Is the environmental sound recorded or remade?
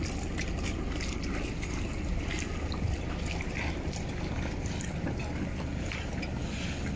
recorded